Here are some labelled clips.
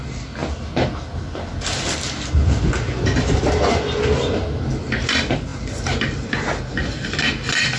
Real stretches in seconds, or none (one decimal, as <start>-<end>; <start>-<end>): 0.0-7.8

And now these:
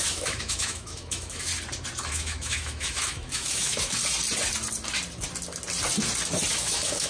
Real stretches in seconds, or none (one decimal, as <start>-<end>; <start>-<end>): 1.5-2.1; 4.0-6.5

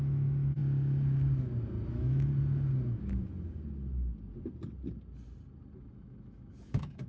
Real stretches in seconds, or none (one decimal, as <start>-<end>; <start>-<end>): 0.6-1.9; 2.3-5.9

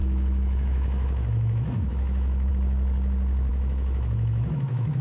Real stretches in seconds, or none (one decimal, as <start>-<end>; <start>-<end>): 2.5-3.5

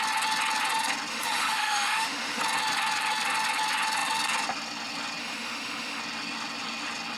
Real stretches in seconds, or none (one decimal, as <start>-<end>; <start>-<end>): 0.0-1.1; 2.4-5.2; 6.0-7.2

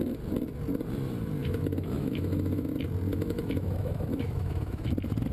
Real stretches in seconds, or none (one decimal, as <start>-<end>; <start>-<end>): 0.0-1.4; 2.7-3.1; 4.8-5.3